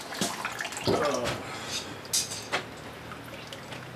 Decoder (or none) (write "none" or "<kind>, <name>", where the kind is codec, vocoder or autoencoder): none